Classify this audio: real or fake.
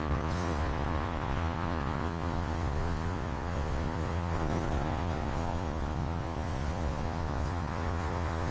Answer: fake